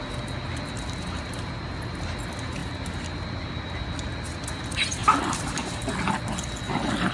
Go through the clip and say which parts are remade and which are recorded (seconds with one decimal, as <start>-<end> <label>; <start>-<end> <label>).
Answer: 0.0-5.0 recorded; 5.0-5.8 remade; 5.8-7.1 recorded